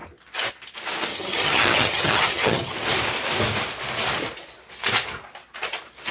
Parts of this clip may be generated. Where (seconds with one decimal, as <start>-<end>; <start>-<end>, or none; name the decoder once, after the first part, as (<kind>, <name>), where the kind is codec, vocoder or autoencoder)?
1.1-2.7 (vocoder, HiFi-GAN)